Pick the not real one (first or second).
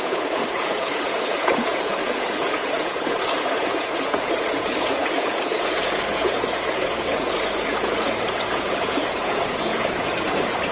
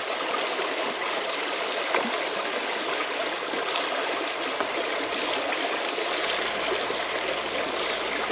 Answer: first